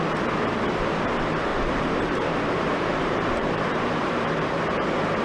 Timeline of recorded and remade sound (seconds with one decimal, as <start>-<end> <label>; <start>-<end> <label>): 0.0-1.5 recorded; 1.5-4.6 remade; 4.6-5.2 recorded